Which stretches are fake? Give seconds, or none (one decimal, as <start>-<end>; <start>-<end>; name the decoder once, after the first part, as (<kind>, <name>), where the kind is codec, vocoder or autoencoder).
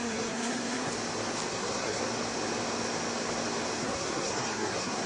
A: 0.0-0.9 (codec, SNAC); 1.5-2.0; 3.8-5.1